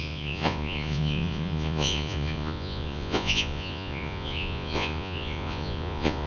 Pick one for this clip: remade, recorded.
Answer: remade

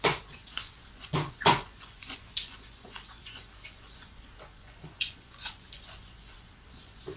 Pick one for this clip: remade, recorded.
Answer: remade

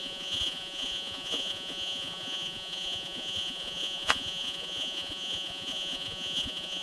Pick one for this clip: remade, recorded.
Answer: remade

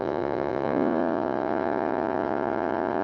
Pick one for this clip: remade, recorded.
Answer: remade